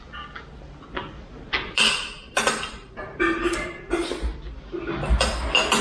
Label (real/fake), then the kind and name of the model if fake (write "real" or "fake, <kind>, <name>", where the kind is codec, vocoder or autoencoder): real